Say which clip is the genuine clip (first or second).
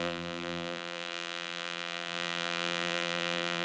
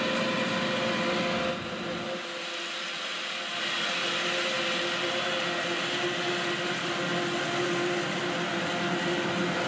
second